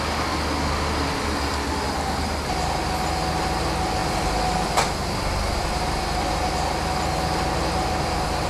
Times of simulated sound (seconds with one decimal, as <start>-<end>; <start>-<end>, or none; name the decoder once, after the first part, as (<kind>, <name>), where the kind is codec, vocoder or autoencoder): none